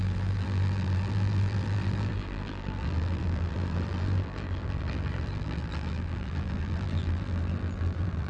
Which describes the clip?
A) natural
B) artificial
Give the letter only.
B